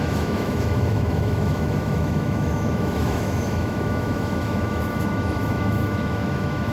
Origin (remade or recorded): remade